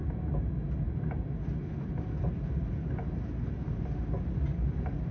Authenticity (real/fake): real